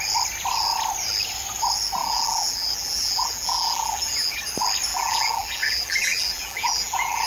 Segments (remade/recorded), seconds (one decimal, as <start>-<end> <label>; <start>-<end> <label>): 0.0-2.0 recorded; 2.0-4.4 remade; 4.4-4.9 recorded; 4.9-7.3 remade